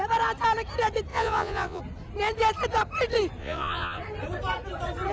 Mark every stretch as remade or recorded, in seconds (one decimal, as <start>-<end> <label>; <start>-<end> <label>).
0.0-1.1 recorded; 1.1-1.8 remade; 1.8-3.4 recorded; 3.4-4.0 remade; 4.0-5.1 recorded